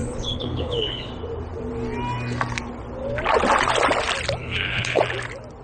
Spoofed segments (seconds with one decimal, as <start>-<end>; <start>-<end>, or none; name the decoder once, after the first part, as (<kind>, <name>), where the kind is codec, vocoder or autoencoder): 0.0-1.1 (codec, HILCodec); 4.4-5.0